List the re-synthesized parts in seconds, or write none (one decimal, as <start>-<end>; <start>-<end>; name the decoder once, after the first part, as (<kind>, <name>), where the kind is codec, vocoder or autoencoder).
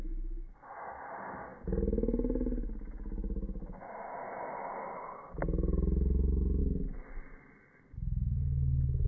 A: none